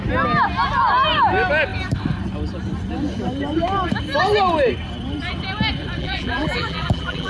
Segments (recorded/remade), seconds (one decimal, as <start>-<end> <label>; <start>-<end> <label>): 0.0-6.0 recorded; 6.0-7.3 remade